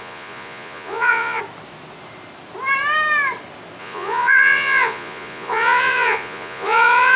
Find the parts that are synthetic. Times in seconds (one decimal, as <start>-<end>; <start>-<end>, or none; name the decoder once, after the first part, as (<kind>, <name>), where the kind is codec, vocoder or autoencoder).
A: 0.0-1.4 (vocoder, Vocos); 3.8-7.2